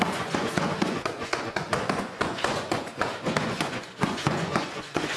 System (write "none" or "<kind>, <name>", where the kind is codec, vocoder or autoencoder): vocoder, Vocos